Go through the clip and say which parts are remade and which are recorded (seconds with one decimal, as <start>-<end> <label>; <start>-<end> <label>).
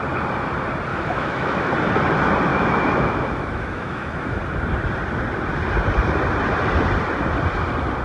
0.0-0.9 recorded; 0.9-1.7 remade; 1.7-2.5 recorded; 2.5-4.4 remade; 4.4-8.0 recorded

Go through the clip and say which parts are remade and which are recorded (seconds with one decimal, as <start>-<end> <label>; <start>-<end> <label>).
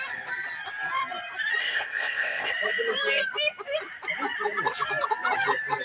0.0-1.6 recorded; 1.6-2.5 remade; 2.5-5.8 recorded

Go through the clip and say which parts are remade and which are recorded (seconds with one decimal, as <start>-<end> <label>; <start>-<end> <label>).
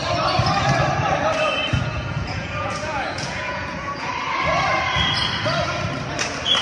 0.0-1.7 recorded; 1.7-4.1 remade; 4.1-6.6 recorded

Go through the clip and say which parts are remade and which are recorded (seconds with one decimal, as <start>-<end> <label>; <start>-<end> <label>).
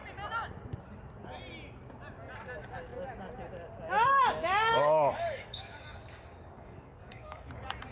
0.0-4.7 recorded; 4.7-7.5 remade; 7.5-7.9 recorded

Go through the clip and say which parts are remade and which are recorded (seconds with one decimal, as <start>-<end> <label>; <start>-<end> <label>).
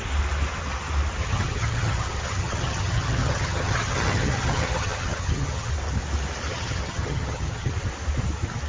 0.0-1.2 recorded; 1.2-5.7 remade; 5.7-6.5 recorded; 6.5-7.7 remade; 7.7-8.7 recorded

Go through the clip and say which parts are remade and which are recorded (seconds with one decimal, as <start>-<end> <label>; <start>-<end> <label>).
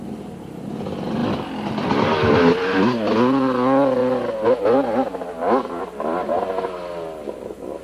0.0-7.8 recorded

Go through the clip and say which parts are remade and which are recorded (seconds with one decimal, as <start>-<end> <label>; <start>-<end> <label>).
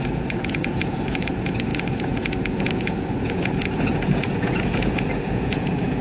0.0-6.0 remade